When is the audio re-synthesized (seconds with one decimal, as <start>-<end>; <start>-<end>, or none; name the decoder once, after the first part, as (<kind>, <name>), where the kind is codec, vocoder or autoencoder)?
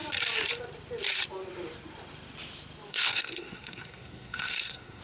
2.9-5.0 (codec, SNAC)